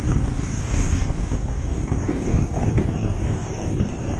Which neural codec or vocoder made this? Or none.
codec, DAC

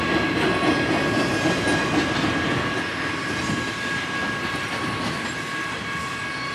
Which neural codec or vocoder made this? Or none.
none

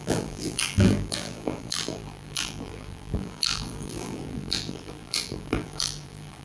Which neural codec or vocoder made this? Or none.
vocoder, BigVGAN v2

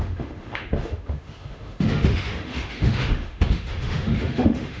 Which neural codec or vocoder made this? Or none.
autoencoder, DAC-VAE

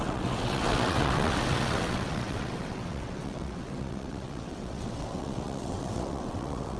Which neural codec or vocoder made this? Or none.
vocoder, WaveNeXt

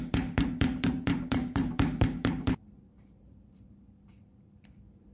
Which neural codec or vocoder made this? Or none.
vocoder, BigVGAN v2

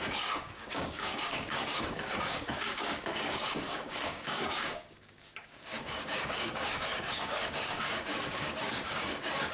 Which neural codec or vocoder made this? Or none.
codec, DAC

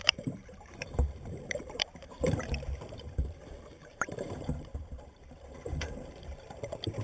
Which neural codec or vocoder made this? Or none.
vocoder, BigVGAN v2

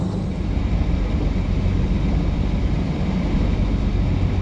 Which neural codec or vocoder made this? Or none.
none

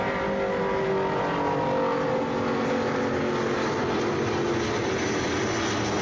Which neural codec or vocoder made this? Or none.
none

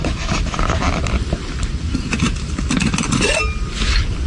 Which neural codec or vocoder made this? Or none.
none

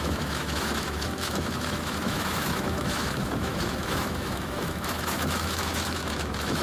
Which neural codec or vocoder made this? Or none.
autoencoder, DAC-VAE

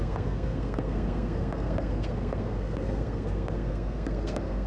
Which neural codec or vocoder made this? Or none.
codec, SNAC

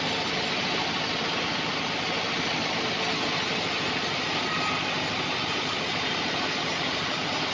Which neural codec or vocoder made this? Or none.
none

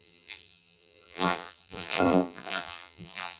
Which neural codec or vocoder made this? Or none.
vocoder, BigVGAN v2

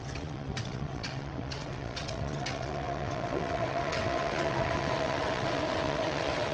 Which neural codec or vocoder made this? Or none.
vocoder, WaveNeXt